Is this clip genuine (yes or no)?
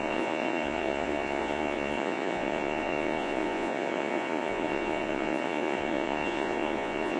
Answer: no